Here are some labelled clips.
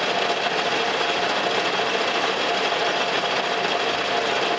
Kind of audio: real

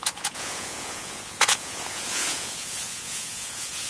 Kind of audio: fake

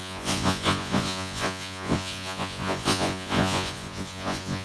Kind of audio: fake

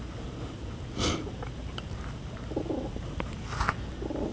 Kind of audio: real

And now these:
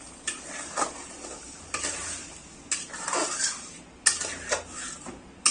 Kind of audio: real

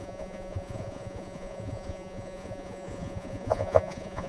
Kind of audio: fake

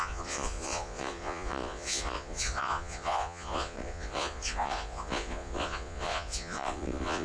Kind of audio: fake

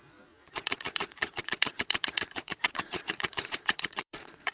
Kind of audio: fake